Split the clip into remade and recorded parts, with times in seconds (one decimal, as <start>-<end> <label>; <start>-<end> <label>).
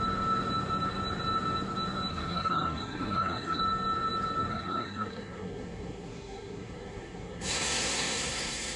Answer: 0.0-2.1 recorded; 2.1-3.6 remade; 3.6-4.5 recorded; 4.5-8.8 remade